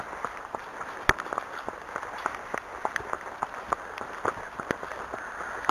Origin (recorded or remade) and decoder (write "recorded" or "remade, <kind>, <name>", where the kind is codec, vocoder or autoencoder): recorded